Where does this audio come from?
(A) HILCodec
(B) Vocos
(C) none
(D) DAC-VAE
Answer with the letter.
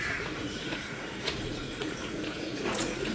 B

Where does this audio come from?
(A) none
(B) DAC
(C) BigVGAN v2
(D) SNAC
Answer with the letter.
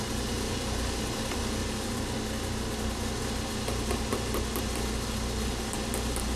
A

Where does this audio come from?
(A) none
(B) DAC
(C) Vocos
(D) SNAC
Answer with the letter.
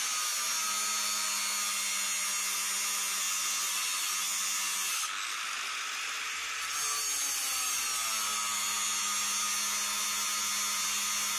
A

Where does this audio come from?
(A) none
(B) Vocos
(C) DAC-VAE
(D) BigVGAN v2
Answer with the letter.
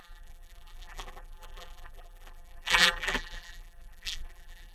D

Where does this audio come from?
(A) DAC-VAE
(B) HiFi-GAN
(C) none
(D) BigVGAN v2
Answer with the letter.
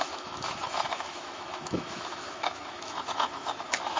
A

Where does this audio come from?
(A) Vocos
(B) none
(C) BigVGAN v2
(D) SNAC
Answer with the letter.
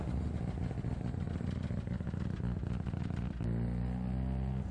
B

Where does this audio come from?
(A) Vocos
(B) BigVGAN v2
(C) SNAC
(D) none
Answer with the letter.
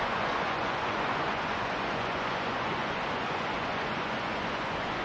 A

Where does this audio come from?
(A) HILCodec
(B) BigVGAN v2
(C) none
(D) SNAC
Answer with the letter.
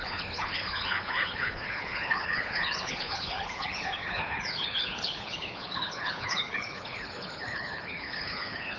A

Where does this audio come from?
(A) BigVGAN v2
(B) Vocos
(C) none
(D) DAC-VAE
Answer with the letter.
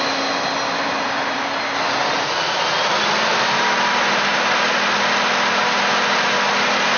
C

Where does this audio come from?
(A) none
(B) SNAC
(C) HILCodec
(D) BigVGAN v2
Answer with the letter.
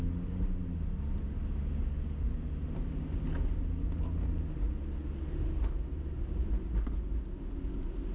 A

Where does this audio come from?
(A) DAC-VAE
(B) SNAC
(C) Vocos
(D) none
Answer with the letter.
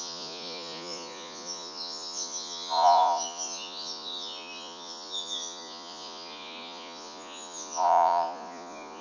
C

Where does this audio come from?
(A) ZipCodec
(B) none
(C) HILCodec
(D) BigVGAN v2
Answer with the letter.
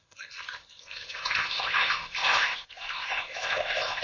A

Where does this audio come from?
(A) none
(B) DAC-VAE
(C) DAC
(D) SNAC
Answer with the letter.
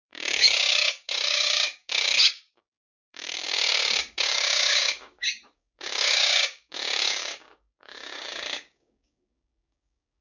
C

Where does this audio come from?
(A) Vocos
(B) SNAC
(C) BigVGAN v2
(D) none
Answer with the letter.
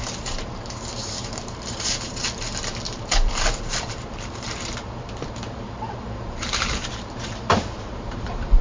C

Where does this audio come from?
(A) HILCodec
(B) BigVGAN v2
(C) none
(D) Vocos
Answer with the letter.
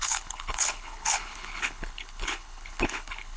A